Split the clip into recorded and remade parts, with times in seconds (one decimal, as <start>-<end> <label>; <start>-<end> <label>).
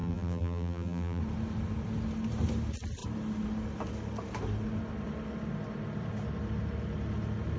0.0-1.2 remade; 1.2-7.6 recorded